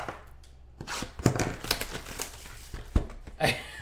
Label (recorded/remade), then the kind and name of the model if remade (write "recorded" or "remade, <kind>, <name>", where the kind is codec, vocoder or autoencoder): recorded